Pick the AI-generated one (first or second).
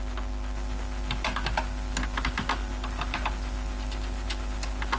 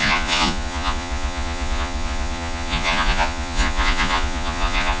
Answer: second